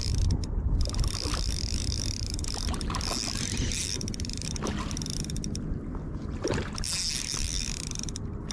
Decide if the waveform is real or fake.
real